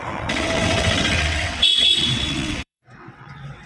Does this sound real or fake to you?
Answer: fake